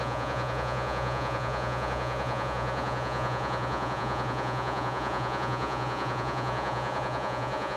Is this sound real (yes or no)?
no